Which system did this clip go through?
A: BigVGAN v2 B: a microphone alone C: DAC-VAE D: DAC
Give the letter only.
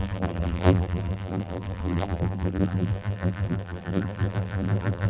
A